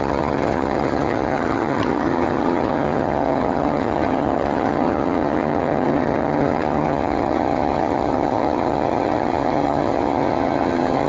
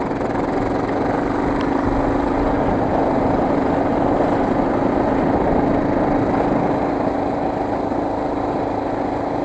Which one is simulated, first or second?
first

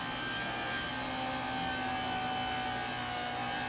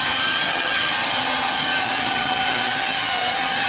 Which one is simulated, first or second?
second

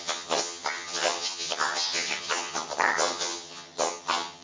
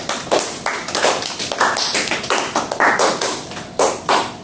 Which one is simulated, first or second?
first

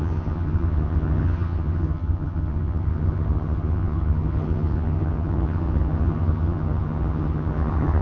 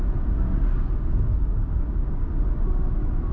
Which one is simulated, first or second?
first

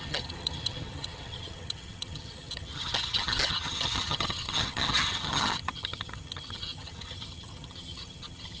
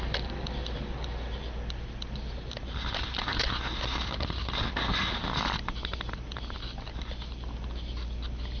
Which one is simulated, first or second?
first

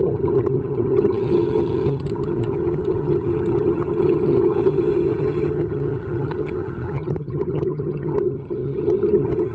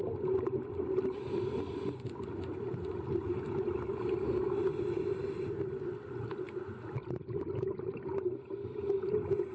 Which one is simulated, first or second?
first